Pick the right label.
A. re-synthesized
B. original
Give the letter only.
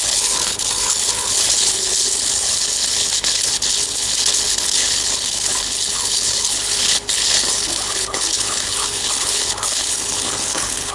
A